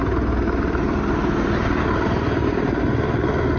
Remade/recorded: recorded